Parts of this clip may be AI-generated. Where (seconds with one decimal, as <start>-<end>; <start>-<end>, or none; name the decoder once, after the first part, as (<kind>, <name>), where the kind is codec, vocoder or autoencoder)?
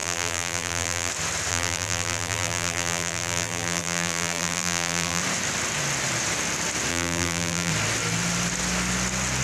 0.0-1.1 (vocoder, BigVGAN v2); 1.5-5.2; 6.9-7.7